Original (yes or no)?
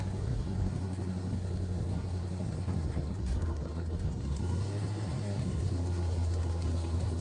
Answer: no